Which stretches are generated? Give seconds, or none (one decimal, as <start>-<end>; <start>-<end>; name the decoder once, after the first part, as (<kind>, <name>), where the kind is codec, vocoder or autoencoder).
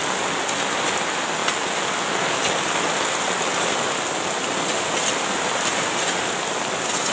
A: 5.7-6.6 (vocoder, BigVGAN v2)